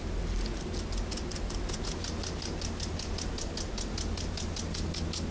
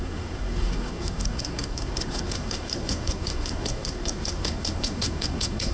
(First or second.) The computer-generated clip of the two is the second